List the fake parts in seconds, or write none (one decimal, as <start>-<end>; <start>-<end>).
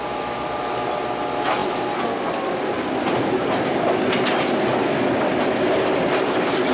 none